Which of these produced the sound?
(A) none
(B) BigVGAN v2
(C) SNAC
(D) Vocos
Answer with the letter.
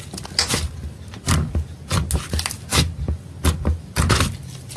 A